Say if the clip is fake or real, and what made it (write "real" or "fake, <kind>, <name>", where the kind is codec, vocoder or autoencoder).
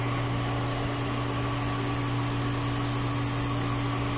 real